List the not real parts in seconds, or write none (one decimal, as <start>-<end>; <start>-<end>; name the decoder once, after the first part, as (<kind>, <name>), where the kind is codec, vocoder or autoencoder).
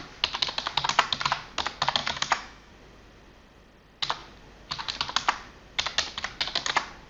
2.0-2.7 (autoencoder, DAC-VAE)